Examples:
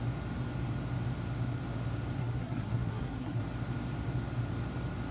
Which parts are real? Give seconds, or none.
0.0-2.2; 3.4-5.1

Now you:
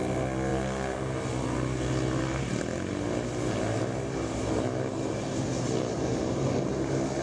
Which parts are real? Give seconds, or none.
0.0-7.2

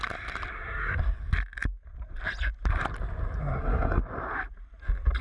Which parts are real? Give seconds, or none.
0.0-0.5; 1.2-3.4; 4.0-5.2

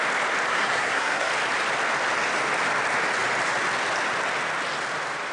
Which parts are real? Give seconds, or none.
0.0-0.5; 1.3-5.3

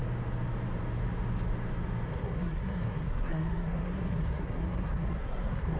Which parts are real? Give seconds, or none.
0.0-2.1

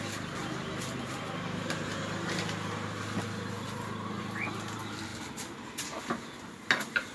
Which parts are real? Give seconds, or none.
0.0-7.1